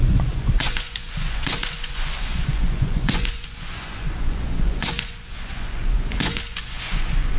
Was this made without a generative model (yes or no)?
no